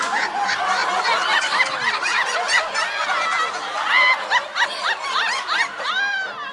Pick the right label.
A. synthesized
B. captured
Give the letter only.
B